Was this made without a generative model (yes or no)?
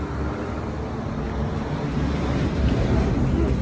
yes